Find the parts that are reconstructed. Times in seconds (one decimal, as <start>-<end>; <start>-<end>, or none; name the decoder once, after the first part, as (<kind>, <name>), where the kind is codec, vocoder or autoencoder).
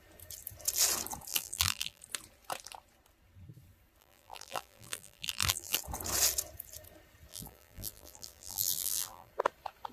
1.3-2.0 (vocoder, BigVGAN v2); 4.0-5.8; 7.3-9.3